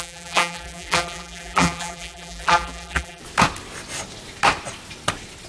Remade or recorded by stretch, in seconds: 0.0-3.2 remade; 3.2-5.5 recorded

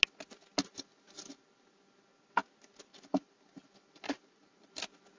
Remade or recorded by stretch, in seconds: 0.0-0.7 recorded; 0.7-1.3 remade; 1.3-2.9 recorded; 2.9-4.8 remade; 4.8-5.2 recorded